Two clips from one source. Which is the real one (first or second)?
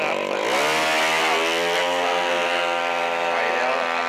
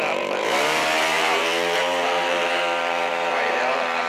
first